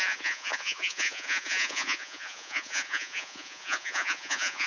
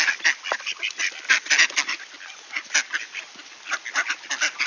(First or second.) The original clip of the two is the second